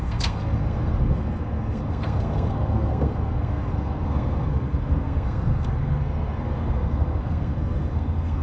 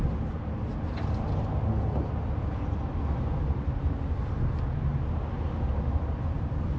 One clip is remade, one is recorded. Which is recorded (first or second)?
second